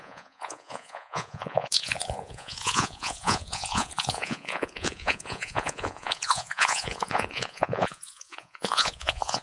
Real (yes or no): no